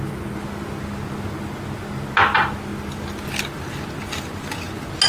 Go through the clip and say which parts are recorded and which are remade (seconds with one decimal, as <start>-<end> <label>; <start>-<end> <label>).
0.0-5.1 recorded